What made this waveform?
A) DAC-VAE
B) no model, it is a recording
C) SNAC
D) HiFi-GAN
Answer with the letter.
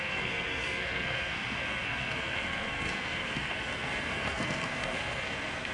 C